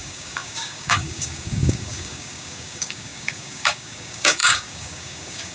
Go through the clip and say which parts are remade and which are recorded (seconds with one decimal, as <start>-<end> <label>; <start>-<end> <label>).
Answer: 0.0-5.5 remade